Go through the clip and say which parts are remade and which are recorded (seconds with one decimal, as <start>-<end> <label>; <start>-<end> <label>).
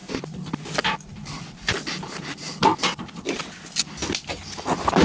0.0-5.0 recorded